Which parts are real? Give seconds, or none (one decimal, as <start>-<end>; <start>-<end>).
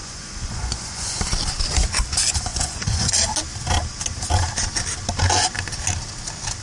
1.2-2.5; 3.1-6.6